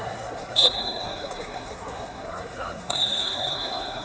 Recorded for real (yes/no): no